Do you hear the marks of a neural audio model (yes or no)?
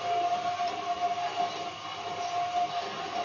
no